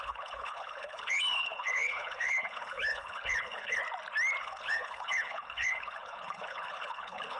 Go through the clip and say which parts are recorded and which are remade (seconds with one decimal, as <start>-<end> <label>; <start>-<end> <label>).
0.0-3.8 remade; 3.8-4.4 recorded; 4.4-7.4 remade